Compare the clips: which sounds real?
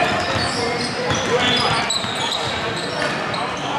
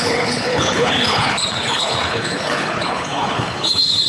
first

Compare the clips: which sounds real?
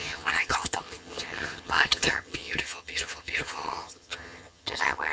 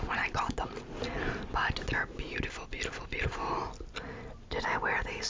second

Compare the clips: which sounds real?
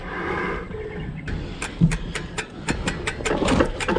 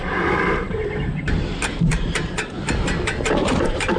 first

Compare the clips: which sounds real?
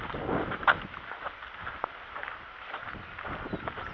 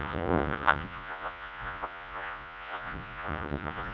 first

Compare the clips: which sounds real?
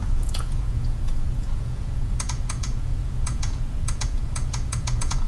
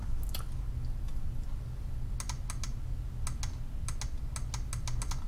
second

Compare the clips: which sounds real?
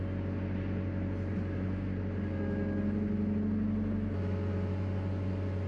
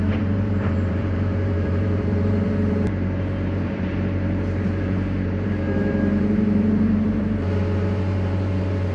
first